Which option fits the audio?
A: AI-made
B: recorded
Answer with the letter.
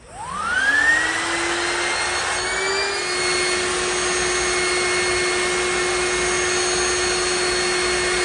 B